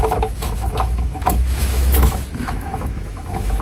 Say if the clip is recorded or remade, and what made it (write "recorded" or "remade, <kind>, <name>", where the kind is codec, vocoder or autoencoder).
remade, autoencoder, DAC-VAE